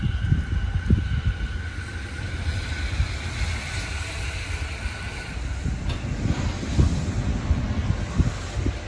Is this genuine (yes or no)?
yes